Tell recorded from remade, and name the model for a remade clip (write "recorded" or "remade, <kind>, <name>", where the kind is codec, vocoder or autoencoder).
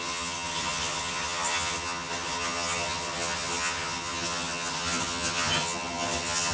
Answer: remade, vocoder, HiFi-GAN